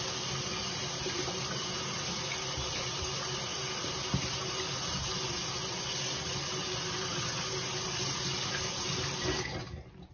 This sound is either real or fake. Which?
real